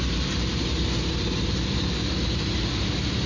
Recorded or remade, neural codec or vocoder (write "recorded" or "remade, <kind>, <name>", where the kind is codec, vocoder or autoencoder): remade, vocoder, BigVGAN v2